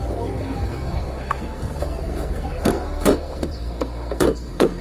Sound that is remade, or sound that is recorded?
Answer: remade